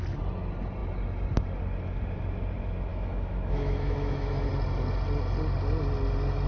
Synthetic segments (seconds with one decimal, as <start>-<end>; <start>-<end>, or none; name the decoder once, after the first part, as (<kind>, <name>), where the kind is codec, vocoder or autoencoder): 2.9-4.5 (autoencoder, DAC-VAE)